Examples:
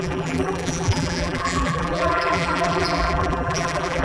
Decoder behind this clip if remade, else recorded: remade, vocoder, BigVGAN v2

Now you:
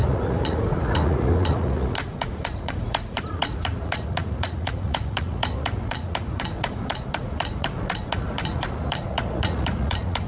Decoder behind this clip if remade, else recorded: remade, vocoder, Vocos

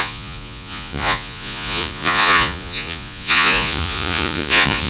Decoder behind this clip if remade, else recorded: remade, vocoder, Vocos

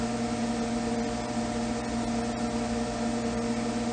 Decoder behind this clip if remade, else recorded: recorded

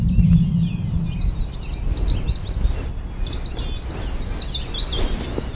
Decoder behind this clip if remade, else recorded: recorded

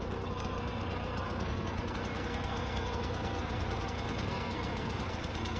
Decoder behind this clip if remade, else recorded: remade, codec, SNAC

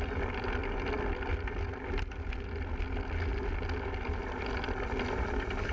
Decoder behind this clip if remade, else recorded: recorded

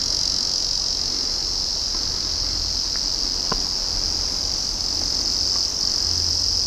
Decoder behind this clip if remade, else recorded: recorded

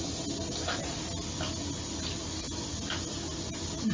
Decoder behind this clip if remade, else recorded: recorded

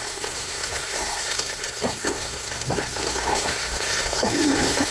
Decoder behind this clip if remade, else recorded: remade, codec, SNAC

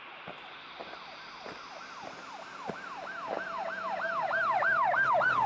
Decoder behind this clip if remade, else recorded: recorded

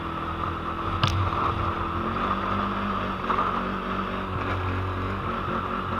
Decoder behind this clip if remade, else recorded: recorded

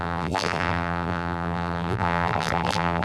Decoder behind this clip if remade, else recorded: remade, vocoder, BigVGAN v2